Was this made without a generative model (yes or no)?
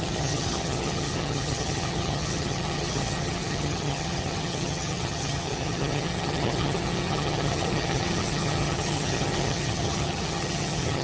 no